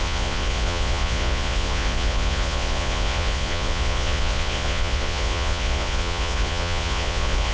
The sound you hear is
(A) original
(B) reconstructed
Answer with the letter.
B